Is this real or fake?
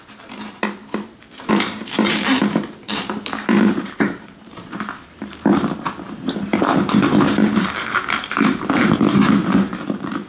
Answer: fake